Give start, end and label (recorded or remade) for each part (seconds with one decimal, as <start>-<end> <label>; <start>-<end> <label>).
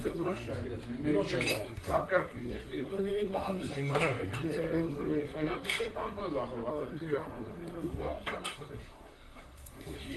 0.0-0.5 remade; 0.5-1.5 recorded; 1.5-6.2 remade; 6.2-6.7 recorded; 6.7-10.2 remade